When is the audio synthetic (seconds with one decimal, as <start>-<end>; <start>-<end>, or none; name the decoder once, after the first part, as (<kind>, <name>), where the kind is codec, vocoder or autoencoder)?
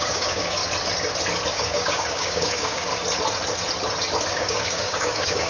0.0-0.6 (codec, DAC); 1.5-2.9; 4.3-5.5